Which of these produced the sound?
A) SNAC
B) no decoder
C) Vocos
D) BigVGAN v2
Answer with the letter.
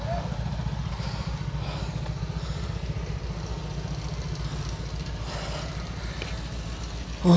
B